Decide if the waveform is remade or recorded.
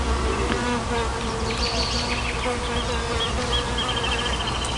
recorded